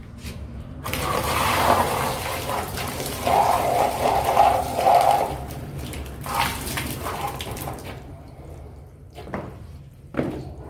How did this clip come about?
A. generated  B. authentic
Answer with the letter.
A